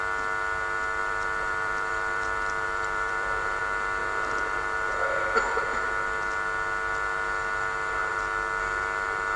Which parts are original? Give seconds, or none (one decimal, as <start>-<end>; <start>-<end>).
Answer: 0.0-1.0; 3.6-9.4